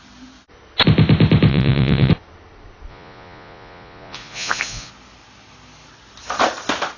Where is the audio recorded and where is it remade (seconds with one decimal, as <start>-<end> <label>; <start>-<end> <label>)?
0.0-1.5 recorded; 1.5-2.1 remade; 2.1-2.9 recorded; 2.9-4.9 remade; 4.9-7.0 recorded

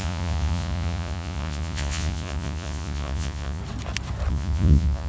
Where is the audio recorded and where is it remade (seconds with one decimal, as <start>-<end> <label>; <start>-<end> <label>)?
0.0-3.6 remade; 3.6-4.3 recorded; 4.3-5.1 remade

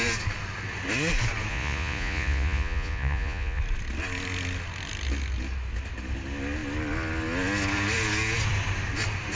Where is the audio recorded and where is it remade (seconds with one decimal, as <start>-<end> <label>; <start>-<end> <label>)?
0.0-1.5 recorded; 1.5-3.6 remade; 3.6-9.4 recorded

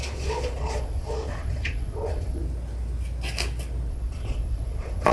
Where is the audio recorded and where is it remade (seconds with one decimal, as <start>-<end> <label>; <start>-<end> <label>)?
0.0-2.4 remade; 2.4-3.9 recorded; 3.9-5.1 remade

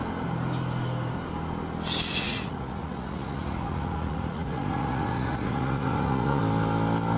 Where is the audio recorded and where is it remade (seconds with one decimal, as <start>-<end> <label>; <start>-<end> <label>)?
0.0-2.1 recorded; 2.1-6.4 remade; 6.4-7.2 recorded

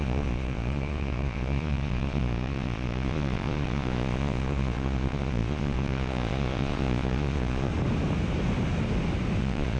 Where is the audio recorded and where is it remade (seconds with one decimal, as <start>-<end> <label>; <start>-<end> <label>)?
0.0-7.7 remade; 7.7-9.4 recorded; 9.4-9.8 remade